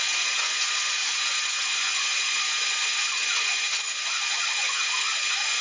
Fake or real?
fake